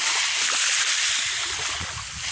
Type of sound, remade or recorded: recorded